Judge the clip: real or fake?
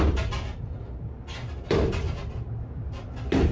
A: real